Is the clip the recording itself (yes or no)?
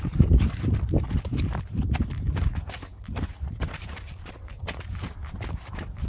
no